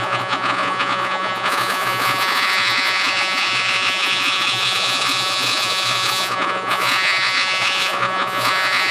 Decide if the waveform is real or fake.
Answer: fake